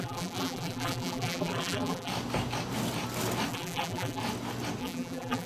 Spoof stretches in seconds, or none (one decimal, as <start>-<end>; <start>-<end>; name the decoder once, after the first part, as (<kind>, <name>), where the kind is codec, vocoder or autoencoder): 0.0-2.1 (vocoder, BigVGAN v2); 3.5-4.2; 4.8-5.5